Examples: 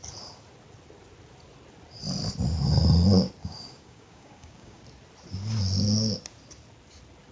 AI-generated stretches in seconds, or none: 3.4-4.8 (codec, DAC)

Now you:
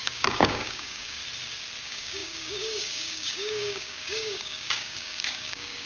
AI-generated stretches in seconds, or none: 0.0-1.2 (codec, DAC); 1.8-5.9

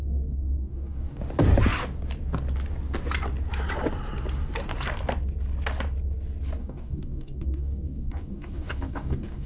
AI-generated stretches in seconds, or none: 0.0-1.2 (codec, DAC); 6.6-9.5

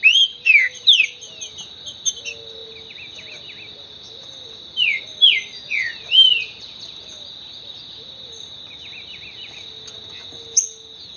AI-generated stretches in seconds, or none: none